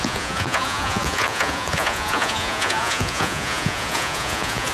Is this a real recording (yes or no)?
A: no